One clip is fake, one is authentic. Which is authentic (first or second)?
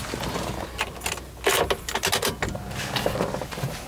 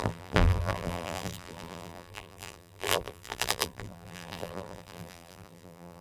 first